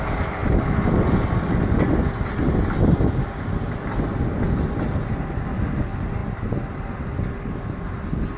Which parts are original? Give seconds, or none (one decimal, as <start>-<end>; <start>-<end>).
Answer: 0.0-8.4